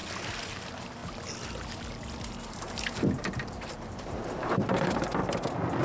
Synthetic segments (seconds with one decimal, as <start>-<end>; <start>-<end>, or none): 0.5-1.0; 2.5-5.2